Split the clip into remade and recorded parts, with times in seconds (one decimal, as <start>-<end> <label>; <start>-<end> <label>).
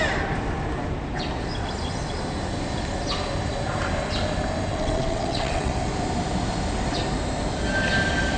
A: 0.0-4.7 recorded; 4.7-5.7 remade; 5.7-8.4 recorded